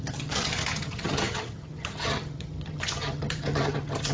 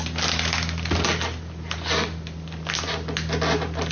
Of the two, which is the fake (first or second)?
first